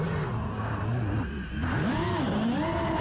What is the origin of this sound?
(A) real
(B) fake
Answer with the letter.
A